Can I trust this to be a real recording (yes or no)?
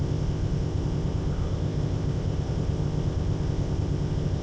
no